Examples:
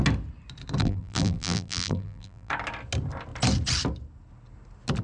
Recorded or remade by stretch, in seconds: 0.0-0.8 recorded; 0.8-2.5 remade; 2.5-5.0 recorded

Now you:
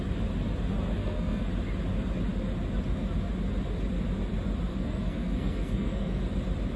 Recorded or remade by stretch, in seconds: 0.0-1.0 recorded; 1.0-1.5 remade; 1.5-4.7 recorded; 4.7-6.2 remade; 6.2-6.8 recorded

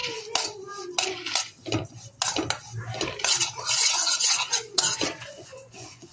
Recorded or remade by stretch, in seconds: 0.0-3.7 recorded; 3.7-6.1 remade

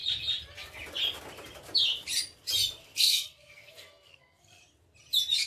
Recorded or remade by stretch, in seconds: 0.0-2.8 recorded; 2.8-4.6 remade; 4.6-5.5 recorded

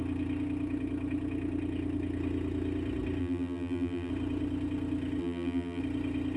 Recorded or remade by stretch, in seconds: 0.0-3.2 recorded; 3.2-4.1 remade; 4.1-5.2 recorded; 5.2-5.8 remade; 5.8-6.4 recorded

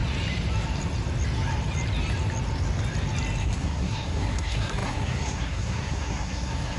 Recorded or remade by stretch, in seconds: 0.0-3.4 recorded; 3.4-6.8 remade